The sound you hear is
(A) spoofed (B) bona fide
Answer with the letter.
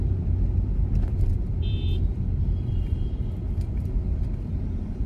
A